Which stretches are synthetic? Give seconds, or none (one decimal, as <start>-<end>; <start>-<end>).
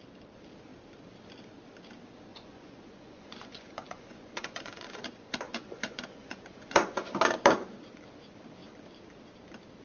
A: 2.3-7.1